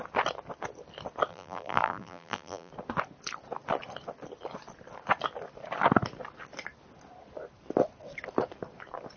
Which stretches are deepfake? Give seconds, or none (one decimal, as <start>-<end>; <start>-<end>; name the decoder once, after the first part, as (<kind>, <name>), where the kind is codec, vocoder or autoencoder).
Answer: 1.3-2.7 (vocoder, BigVGAN v2)